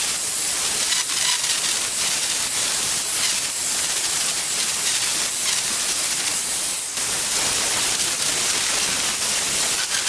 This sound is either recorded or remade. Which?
recorded